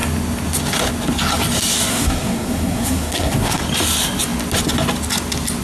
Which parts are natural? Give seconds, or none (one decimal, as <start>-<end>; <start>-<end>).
0.0-1.9; 3.6-5.6